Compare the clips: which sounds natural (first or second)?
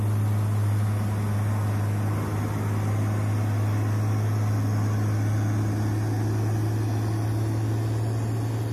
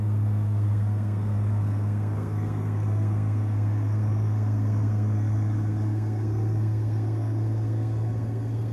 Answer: first